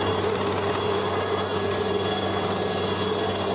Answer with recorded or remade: recorded